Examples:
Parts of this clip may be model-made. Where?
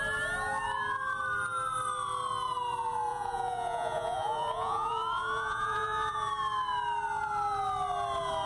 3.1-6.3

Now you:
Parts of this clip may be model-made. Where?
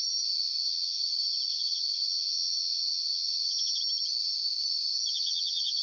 0.6-1.1; 1.5-3.8; 5.1-5.8